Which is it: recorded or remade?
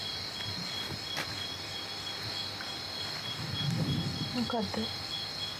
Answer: recorded